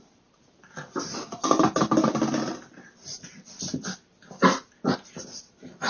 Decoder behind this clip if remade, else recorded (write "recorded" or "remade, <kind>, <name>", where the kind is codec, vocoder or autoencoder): recorded